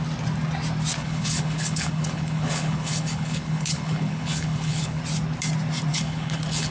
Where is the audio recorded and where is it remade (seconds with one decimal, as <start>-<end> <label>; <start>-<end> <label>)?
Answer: 0.0-1.0 recorded; 1.0-5.0 remade; 5.0-5.9 recorded; 5.9-6.7 remade